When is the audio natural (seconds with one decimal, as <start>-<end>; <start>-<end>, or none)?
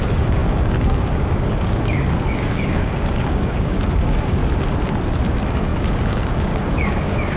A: 4.4-5.3